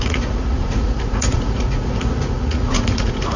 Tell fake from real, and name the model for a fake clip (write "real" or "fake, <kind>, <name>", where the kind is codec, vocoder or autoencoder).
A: fake, vocoder, Vocos